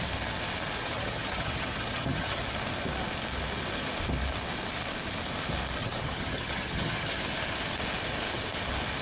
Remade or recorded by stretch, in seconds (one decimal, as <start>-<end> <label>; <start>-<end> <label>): 0.0-0.8 recorded; 0.8-2.4 remade; 2.4-5.8 recorded; 5.8-7.2 remade; 7.2-9.0 recorded